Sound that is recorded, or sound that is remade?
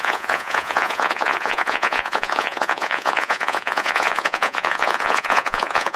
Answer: remade